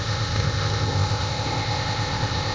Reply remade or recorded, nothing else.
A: remade